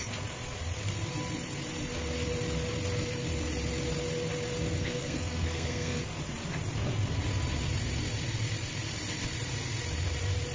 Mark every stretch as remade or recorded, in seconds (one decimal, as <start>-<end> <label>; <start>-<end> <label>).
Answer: 0.0-4.8 recorded; 4.8-6.0 remade; 6.0-10.5 recorded